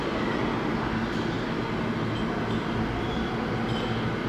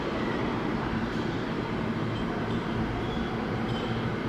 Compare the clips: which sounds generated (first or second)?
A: second